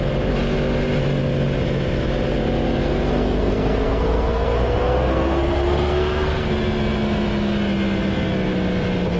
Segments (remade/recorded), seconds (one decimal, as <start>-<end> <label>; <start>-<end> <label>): 0.0-2.8 recorded; 2.8-6.5 remade; 6.5-9.2 recorded